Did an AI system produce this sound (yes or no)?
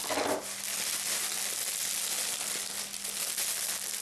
no